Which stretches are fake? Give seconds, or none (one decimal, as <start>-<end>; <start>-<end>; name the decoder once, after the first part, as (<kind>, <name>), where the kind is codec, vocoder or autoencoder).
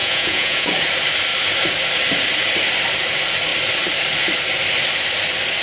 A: 0.0-0.7 (vocoder, Vocos)